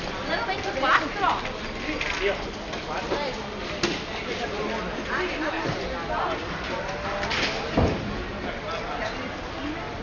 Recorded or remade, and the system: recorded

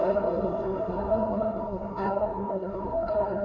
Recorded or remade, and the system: remade, codec, SNAC